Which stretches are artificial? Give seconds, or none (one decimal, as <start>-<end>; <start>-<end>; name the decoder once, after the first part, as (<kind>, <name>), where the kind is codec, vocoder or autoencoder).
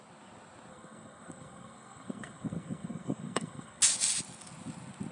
0.7-3.8 (codec, SNAC)